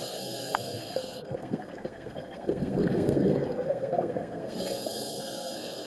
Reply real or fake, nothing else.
fake